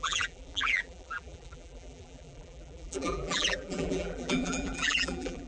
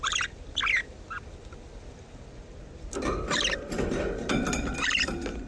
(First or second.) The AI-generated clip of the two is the first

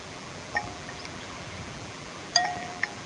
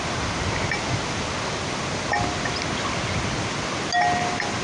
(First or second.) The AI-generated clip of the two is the first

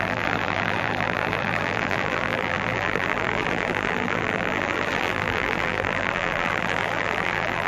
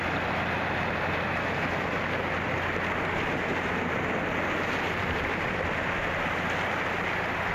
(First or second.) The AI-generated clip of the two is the first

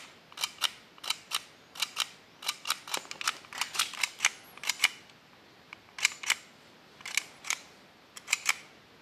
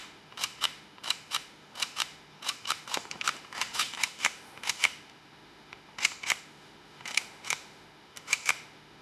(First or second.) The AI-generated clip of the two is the second